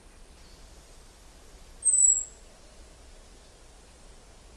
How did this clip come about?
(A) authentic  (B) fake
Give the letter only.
A